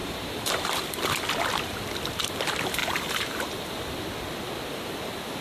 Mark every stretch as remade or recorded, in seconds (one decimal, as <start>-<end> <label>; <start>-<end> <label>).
0.0-0.7 remade; 0.7-2.8 recorded; 2.8-4.0 remade; 4.0-5.4 recorded